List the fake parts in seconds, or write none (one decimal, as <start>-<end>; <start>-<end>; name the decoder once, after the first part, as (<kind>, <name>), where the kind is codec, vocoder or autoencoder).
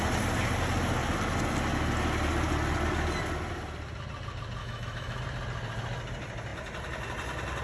4.6-5.2 (autoencoder, DAC-VAE)